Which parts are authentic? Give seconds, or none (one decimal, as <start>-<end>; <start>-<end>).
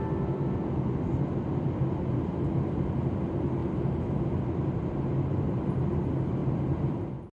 0.0-7.3